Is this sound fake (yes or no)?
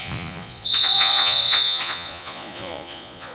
yes